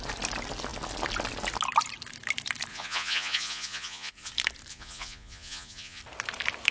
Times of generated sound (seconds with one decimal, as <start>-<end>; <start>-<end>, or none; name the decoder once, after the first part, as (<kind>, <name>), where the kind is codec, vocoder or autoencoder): 2.7-4.3 (vocoder, Vocos); 4.7-6.0